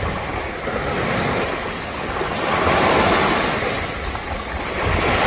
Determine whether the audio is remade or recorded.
recorded